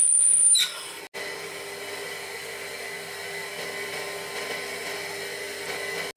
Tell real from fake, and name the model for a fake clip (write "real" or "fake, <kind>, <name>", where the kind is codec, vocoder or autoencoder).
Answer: real